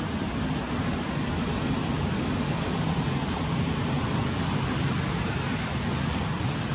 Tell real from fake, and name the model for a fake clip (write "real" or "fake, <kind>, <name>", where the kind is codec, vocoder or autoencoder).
real